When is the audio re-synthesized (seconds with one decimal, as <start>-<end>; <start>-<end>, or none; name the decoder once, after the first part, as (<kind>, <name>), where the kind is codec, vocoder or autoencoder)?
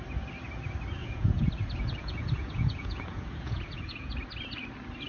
1.0-1.5 (vocoder, Vocos); 2.0-4.2